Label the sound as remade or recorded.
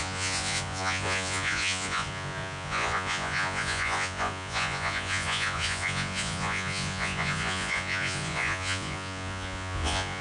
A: remade